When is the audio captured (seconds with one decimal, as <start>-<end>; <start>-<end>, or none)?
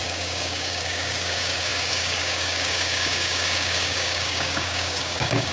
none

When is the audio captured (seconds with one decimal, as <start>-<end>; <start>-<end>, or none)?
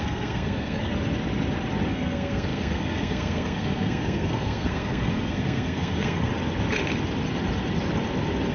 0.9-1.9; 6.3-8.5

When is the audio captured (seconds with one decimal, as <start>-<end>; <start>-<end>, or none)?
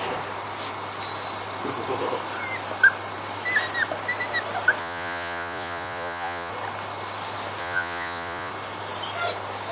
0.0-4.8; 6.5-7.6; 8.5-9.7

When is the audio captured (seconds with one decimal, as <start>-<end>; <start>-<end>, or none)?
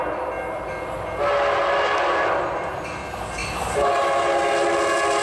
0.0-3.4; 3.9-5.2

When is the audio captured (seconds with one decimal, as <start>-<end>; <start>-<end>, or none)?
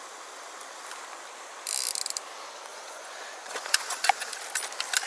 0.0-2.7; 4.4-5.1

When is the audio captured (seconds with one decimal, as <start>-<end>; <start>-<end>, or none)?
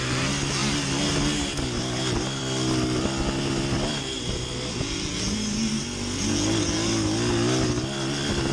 0.0-8.5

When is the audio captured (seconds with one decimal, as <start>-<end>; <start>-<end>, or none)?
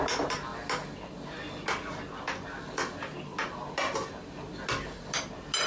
0.0-5.7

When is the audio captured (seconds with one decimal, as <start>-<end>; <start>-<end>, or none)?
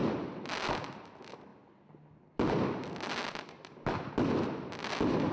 0.5-5.3